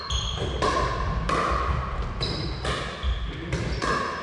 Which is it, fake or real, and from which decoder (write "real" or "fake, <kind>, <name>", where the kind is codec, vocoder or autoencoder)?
real